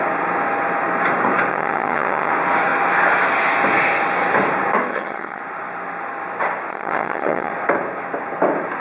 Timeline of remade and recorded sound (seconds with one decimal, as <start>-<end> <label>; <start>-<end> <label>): 0.0-1.5 recorded; 1.5-2.3 remade; 2.3-4.9 recorded; 4.9-5.4 remade; 5.4-6.7 recorded; 6.7-7.5 remade; 7.5-8.8 recorded